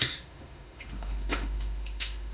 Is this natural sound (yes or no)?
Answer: no